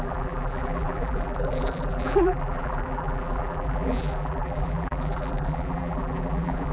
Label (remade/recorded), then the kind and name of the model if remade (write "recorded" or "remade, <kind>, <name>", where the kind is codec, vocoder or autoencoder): remade, vocoder, BigVGAN v2